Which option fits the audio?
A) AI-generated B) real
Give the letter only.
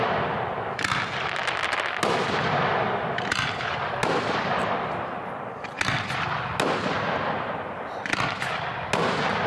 B